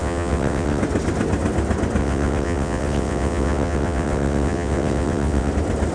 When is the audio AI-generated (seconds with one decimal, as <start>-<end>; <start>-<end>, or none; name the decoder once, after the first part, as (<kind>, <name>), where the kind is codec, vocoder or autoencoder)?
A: 0.0-0.8 (vocoder, WaveNeXt); 2.0-5.5